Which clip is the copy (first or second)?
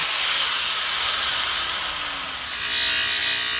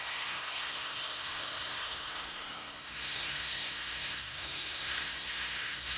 second